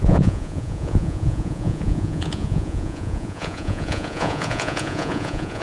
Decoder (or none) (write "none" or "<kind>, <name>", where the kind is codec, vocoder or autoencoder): vocoder, Vocos